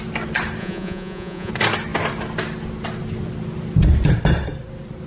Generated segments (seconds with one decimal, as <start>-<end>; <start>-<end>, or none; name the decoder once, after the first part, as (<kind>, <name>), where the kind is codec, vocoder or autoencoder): 0.6-1.5 (vocoder, Vocos)